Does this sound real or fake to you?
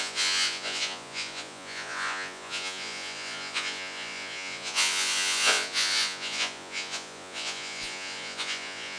fake